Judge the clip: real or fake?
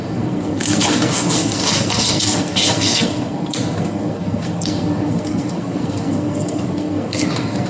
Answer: fake